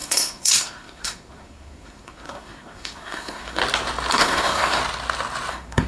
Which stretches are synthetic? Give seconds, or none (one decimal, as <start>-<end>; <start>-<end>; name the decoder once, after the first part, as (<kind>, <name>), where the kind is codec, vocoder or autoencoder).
0.0-3.6 (codec, SNAC); 4.1-4.8; 5.5-5.9